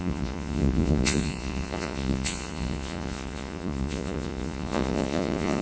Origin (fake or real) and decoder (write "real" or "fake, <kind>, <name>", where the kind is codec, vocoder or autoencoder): fake, vocoder, Vocos